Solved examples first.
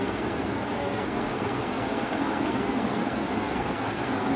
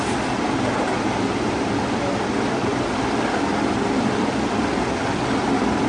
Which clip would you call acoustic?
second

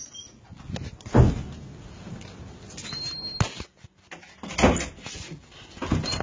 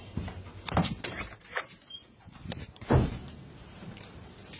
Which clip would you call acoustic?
first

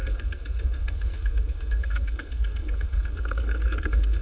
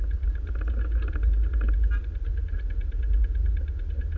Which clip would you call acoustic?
second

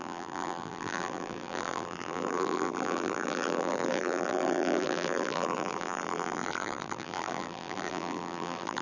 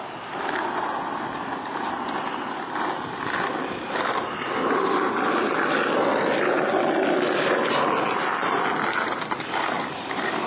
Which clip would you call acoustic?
second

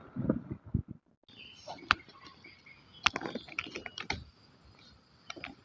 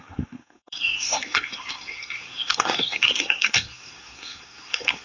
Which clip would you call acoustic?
first